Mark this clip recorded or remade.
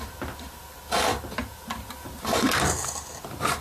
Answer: recorded